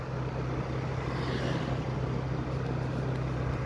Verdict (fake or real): real